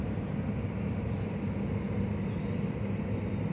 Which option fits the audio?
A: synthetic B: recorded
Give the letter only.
B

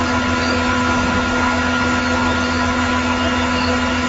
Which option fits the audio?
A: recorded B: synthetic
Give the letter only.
A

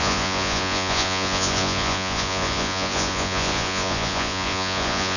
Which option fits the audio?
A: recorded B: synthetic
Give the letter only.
B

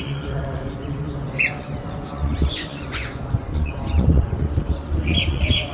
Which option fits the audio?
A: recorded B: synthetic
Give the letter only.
B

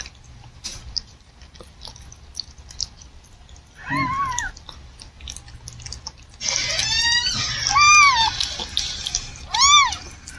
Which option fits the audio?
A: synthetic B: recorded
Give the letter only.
B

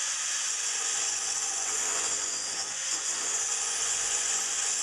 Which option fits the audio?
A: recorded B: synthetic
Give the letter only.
B